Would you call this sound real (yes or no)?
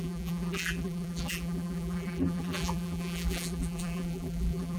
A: no